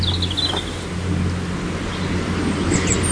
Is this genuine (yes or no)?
yes